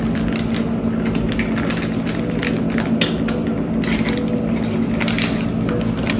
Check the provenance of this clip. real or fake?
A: real